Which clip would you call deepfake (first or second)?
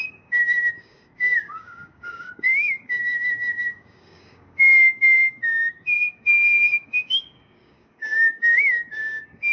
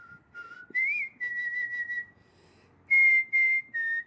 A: first